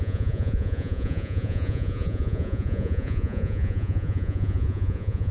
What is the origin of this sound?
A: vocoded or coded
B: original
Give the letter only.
A